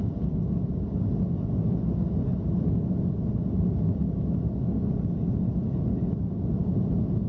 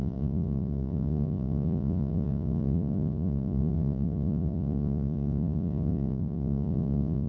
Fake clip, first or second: second